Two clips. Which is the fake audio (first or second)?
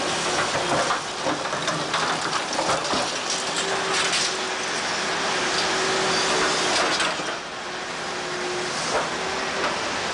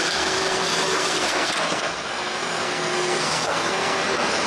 second